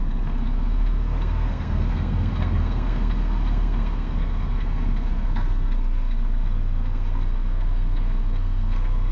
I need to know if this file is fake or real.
fake